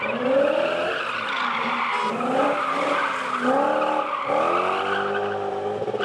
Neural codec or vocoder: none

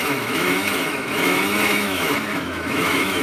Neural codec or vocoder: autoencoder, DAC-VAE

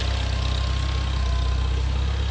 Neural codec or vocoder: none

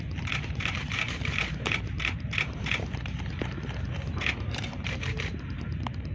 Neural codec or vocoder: vocoder, BigVGAN v2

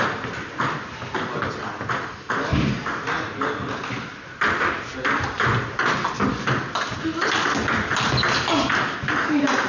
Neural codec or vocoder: none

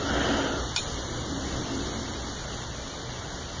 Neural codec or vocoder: none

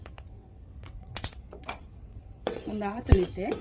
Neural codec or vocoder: vocoder, WaveNeXt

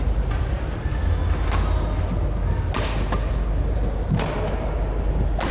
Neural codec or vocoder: none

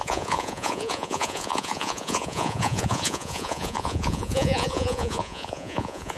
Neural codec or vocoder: vocoder, Vocos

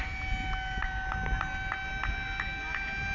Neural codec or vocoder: none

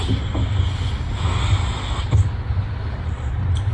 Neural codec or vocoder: none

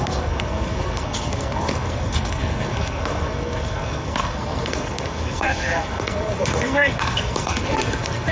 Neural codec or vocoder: codec, SNAC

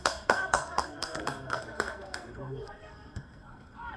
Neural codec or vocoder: codec, SNAC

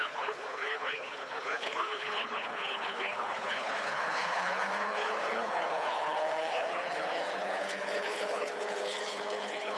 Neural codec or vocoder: codec, HILCodec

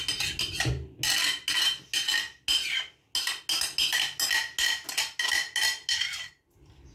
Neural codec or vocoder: none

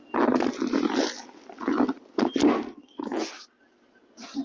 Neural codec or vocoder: none